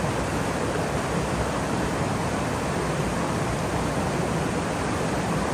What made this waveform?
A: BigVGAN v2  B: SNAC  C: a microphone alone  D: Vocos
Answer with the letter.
C